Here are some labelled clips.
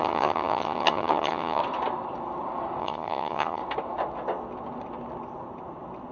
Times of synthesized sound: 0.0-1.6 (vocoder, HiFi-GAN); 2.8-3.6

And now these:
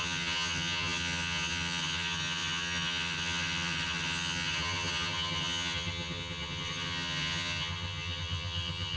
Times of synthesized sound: 0.0-9.0 (vocoder, HiFi-GAN)

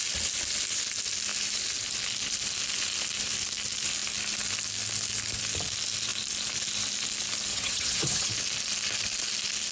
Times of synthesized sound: 7.5-8.3 (vocoder, HiFi-GAN)

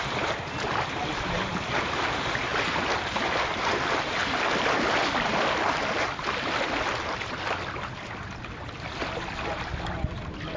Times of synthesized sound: none

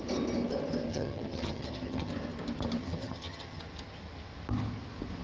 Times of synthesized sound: 0.9-2.1 (vocoder, HiFi-GAN); 2.8-3.6